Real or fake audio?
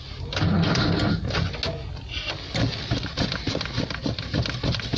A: real